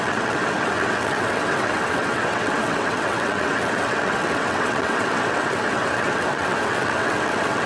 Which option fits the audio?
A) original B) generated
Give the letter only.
B